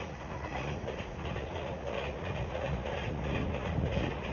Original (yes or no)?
no